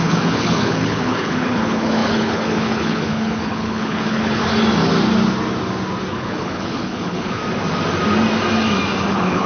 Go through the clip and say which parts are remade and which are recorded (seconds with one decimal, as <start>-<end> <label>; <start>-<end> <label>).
0.0-4.4 remade; 4.4-6.1 recorded; 6.1-7.4 remade; 7.4-9.1 recorded; 9.1-9.5 remade